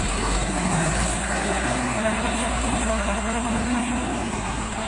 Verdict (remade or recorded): remade